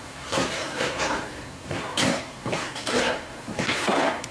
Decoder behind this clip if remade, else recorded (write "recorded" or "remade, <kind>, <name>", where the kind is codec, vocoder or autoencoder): remade, codec, SNAC